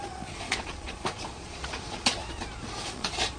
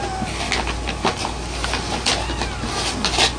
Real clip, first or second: second